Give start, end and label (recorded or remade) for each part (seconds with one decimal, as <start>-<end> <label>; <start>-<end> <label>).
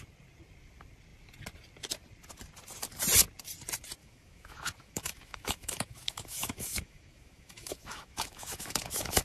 0.0-4.0 recorded; 4.0-9.2 remade